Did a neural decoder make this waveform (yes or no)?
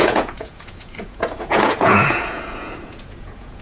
yes